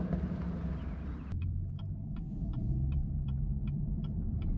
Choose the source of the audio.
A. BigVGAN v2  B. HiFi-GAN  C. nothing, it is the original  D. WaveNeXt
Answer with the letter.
A